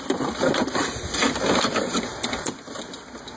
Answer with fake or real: real